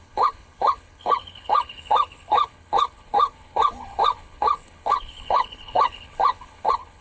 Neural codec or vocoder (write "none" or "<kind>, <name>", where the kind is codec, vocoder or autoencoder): codec, HILCodec